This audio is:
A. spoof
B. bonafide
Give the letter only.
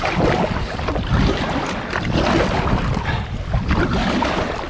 B